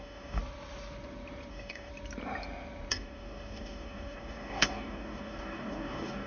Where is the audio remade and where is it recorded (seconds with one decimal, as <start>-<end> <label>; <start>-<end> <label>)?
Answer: 0.0-0.4 remade; 0.4-1.5 recorded; 1.5-1.9 remade; 1.9-2.9 recorded; 2.9-6.3 remade